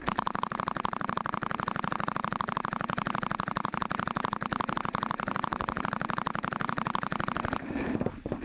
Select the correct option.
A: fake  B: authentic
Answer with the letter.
A